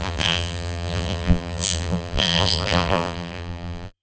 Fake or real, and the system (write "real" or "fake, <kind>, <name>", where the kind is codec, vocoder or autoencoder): fake, vocoder, BigVGAN v2